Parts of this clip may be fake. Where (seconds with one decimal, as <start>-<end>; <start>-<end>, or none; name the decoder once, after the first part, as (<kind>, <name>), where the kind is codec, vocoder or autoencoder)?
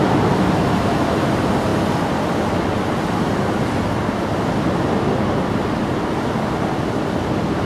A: none